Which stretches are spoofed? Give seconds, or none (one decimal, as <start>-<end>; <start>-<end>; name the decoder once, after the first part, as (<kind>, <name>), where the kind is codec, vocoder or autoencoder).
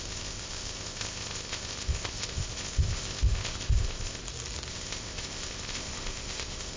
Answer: 0.0-4.2 (codec, ZipCodec); 4.7-6.8